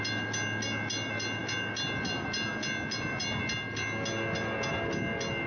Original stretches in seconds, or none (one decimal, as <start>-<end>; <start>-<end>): 0.0-5.5